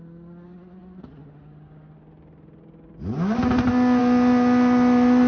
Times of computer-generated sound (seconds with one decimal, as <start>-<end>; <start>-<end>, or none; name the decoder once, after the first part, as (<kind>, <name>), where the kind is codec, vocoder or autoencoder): none